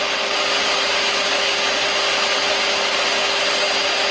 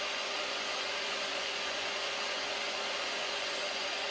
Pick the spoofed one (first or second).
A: second